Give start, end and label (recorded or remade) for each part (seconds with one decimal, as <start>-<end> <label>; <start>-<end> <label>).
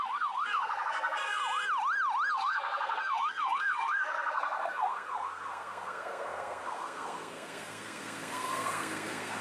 0.0-1.4 remade; 1.4-2.3 recorded; 2.3-9.4 remade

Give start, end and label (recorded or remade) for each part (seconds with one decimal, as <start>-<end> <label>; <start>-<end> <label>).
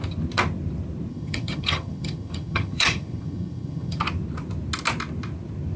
0.0-1.1 recorded; 1.1-4.0 remade; 4.0-5.8 recorded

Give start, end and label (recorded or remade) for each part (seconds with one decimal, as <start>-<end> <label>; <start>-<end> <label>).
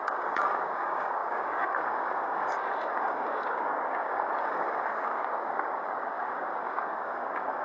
0.0-7.6 remade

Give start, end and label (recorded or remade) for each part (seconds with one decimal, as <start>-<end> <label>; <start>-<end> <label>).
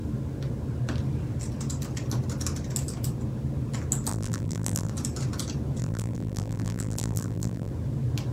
0.0-4.1 recorded; 4.1-4.9 remade; 4.9-5.8 recorded; 5.8-7.7 remade; 7.7-8.3 recorded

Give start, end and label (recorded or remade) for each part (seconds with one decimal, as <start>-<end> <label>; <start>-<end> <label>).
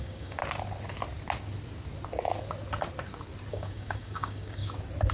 0.0-0.4 remade; 0.4-3.5 recorded; 3.5-4.6 remade; 4.6-5.1 recorded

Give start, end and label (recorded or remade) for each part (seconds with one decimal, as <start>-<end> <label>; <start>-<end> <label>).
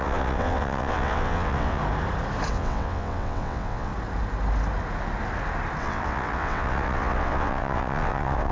0.0-1.8 remade; 1.8-2.5 recorded; 2.5-3.9 remade; 3.9-5.8 recorded; 5.8-8.5 remade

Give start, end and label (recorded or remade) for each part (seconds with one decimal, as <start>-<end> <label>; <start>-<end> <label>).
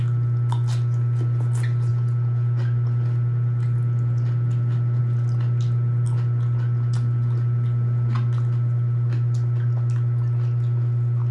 0.0-11.3 recorded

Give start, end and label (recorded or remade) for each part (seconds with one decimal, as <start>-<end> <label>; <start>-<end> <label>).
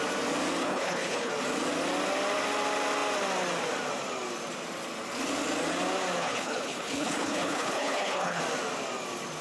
0.0-0.6 recorded; 0.6-1.3 remade; 1.3-6.2 recorded; 6.2-8.4 remade; 8.4-9.4 recorded